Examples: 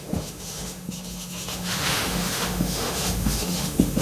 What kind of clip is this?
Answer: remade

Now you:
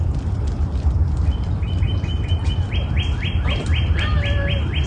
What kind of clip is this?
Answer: recorded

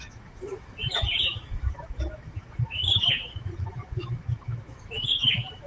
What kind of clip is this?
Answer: remade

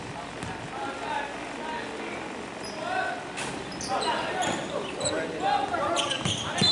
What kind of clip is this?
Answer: recorded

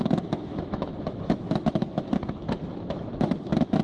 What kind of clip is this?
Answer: remade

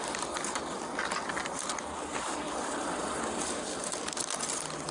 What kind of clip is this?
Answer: recorded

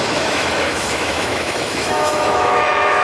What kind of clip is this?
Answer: remade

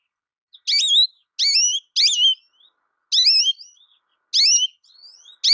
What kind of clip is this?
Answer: recorded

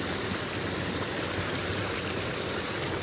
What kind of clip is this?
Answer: recorded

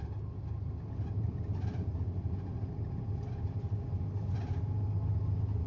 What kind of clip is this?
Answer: recorded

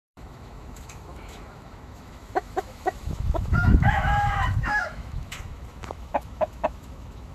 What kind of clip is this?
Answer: remade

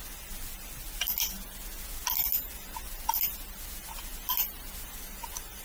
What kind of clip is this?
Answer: recorded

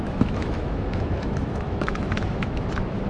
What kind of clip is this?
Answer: remade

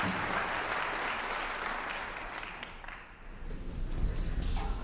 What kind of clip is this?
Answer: recorded